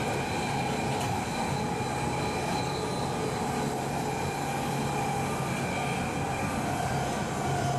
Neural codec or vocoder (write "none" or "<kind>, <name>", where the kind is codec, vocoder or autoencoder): none